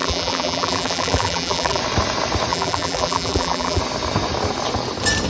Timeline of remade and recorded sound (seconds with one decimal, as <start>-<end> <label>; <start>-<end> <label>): 0.0-1.8 remade; 1.8-2.5 recorded; 2.5-3.8 remade; 3.8-5.3 recorded